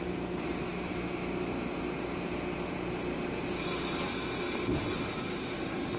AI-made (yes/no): no